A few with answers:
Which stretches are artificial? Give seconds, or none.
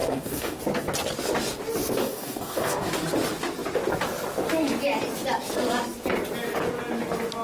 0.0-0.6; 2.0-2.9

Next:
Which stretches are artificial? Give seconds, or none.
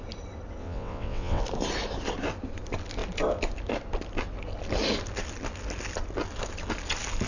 0.6-1.4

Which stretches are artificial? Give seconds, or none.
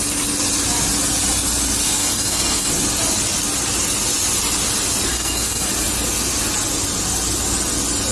1.8-2.7; 5.1-5.7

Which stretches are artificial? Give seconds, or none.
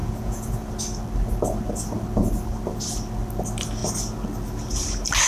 0.0-0.7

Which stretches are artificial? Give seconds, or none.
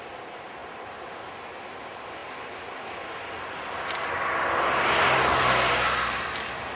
none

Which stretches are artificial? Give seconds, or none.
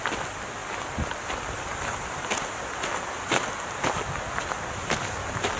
none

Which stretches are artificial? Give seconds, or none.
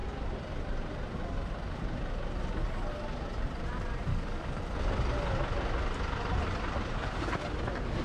4.1-4.6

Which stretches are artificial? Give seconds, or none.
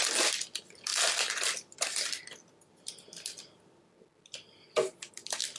none